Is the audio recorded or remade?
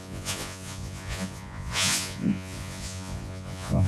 remade